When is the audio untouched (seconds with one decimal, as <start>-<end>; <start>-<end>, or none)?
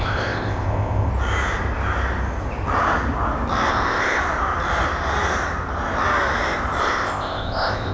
1.1-3.7; 4.2-6.8